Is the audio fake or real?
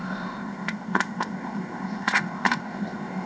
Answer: fake